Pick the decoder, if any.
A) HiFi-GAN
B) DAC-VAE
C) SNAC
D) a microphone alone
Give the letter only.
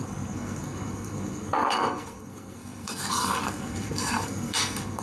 C